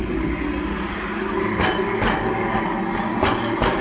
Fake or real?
real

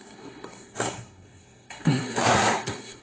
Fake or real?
fake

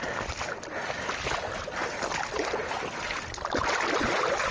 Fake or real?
real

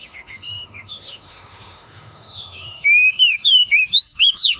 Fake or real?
fake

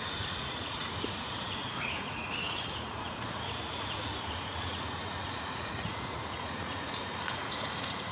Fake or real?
fake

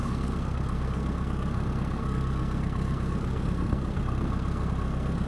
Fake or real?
fake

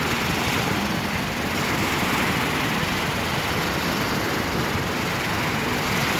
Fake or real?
real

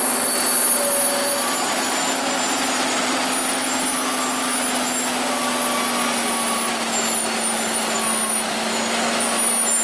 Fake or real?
real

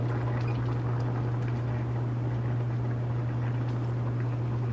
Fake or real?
real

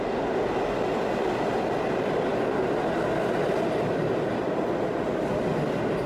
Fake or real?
real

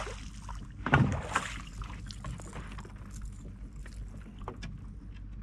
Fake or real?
real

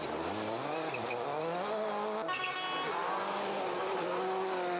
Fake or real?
real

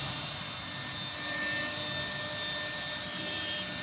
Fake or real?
real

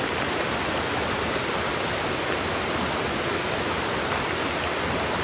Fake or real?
real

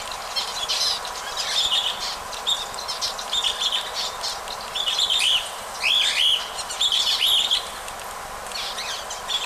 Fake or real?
real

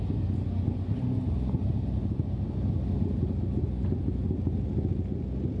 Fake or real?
real